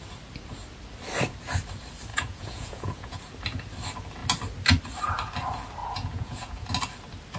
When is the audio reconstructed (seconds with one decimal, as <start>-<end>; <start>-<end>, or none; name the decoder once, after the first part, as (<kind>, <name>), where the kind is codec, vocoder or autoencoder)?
2.1-3.2 (vocoder, Vocos); 5.8-6.7